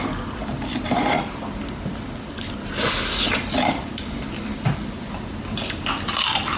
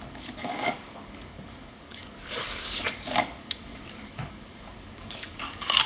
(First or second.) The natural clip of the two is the first